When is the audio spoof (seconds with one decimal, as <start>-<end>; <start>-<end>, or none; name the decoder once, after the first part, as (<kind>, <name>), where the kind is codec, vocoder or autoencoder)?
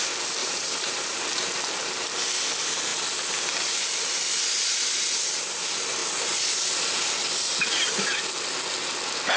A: 0.4-1.2 (vocoder, BigVGAN v2)